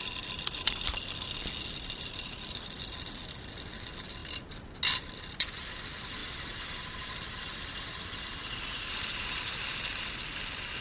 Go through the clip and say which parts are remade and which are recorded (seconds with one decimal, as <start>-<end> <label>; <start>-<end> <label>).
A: 0.0-10.8 recorded